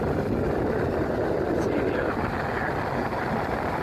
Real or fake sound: real